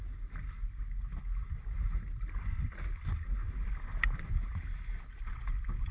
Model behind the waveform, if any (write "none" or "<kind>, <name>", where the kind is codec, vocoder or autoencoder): none